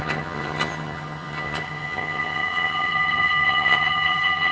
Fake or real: fake